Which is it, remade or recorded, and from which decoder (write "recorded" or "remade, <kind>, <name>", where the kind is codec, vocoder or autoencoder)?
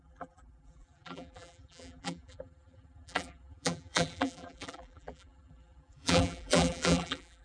remade, vocoder, BigVGAN v2